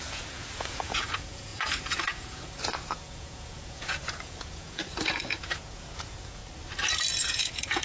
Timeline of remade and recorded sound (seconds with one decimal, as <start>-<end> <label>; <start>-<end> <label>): 0.0-6.4 remade; 6.4-7.2 recorded; 7.2-7.8 remade